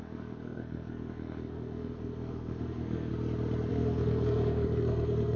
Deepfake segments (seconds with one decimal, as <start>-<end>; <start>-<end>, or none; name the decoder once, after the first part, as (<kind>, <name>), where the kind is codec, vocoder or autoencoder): 0.0-3.1 (codec, SNAC); 3.7-5.4